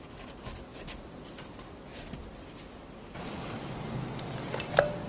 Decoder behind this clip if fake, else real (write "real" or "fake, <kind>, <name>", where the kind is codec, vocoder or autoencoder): real